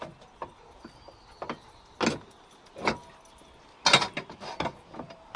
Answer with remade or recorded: recorded